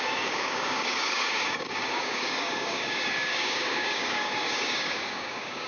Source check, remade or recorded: remade